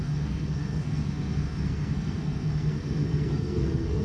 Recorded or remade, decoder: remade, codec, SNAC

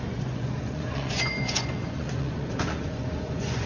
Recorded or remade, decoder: remade, vocoder, Vocos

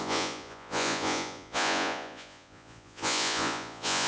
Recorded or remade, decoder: remade, vocoder, Vocos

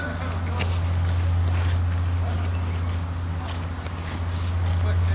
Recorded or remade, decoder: recorded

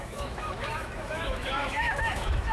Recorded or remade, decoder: remade, autoencoder, DAC-VAE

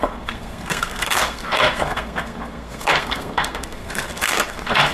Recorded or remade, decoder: remade, codec, SNAC